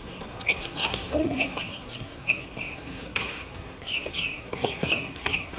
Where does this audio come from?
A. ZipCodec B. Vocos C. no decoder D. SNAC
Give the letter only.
D